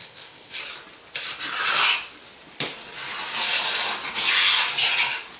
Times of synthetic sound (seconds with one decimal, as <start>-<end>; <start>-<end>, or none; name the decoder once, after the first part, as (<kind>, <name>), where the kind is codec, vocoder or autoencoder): 0.0-0.6 (codec, ZipCodec)